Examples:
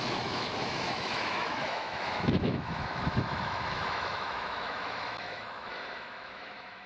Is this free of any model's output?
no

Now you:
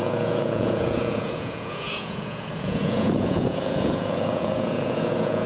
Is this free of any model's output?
no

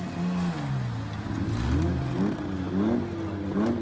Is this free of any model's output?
yes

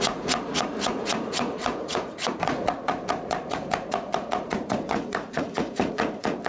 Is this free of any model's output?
no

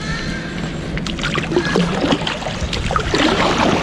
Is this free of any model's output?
yes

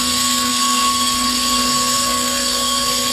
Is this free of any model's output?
no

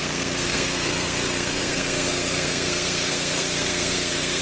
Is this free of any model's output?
no